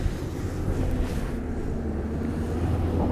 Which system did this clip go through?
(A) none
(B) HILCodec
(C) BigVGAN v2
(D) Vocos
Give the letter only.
A